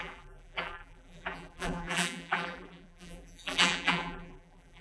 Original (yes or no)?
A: no